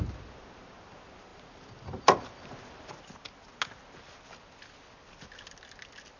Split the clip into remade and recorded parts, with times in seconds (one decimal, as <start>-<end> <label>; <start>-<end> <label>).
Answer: 0.0-6.2 recorded